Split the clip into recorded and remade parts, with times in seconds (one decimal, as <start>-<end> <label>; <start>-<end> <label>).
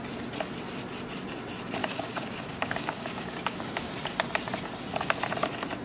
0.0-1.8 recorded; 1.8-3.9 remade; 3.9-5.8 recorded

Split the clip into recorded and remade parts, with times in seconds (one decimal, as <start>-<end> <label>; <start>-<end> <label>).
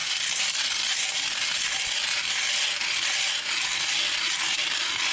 0.0-5.1 recorded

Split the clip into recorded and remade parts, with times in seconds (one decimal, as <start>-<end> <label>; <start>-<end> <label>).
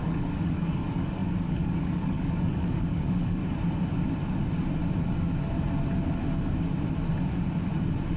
0.0-3.4 remade; 3.4-8.2 recorded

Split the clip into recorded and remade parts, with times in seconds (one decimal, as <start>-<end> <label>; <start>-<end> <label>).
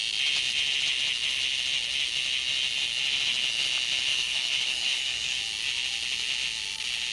0.0-4.1 recorded; 4.1-5.4 remade; 5.4-7.1 recorded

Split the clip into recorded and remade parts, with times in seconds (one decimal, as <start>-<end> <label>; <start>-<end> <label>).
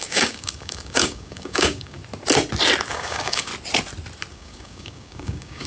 0.0-2.0 remade; 2.0-2.9 recorded; 2.9-3.5 remade; 3.5-4.3 recorded; 4.3-5.7 remade